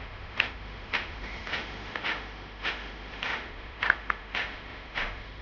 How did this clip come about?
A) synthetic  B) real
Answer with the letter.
A